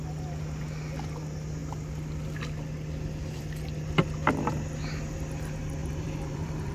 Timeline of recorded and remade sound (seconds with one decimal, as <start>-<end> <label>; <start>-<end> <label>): 0.0-5.8 recorded; 5.8-6.7 remade